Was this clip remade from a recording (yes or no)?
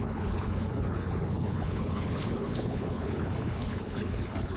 yes